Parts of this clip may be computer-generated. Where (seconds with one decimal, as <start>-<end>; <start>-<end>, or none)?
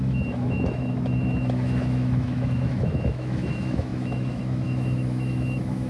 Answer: 0.0-5.9